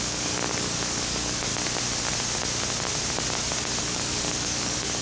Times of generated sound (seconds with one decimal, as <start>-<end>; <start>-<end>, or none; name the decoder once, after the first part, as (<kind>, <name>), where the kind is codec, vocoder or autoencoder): 0.0-1.5 (codec, DAC); 3.8-5.0